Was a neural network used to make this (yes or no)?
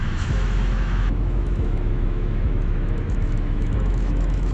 yes